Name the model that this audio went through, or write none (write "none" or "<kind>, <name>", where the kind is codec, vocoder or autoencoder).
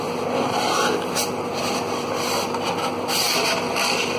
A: none